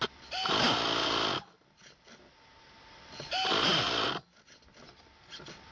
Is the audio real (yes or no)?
yes